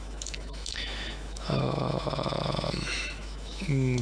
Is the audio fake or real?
fake